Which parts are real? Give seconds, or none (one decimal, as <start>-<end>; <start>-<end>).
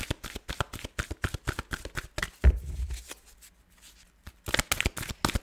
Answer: 0.0-5.4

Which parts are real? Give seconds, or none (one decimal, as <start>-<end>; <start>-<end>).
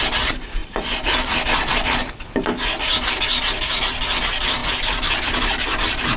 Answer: 0.0-6.2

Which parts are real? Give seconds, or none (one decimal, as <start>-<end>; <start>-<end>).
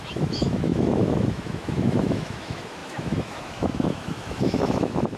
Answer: none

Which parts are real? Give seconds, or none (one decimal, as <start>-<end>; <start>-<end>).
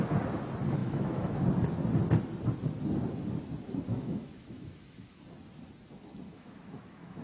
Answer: 0.0-0.8; 1.4-3.9; 5.2-6.1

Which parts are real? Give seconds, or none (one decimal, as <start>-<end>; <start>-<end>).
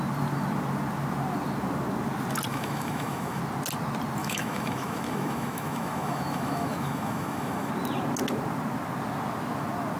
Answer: 0.0-2.5; 3.4-4.2; 7.7-10.0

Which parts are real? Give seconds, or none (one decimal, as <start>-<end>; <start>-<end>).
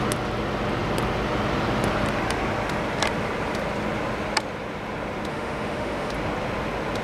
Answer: 0.0-5.3; 6.1-7.0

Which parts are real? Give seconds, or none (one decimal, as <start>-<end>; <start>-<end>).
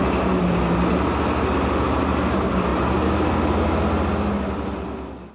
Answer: 0.0-5.3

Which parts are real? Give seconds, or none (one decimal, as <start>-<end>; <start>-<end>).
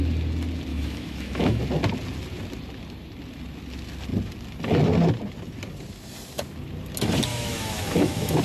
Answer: 0.0-0.7; 1.6-7.3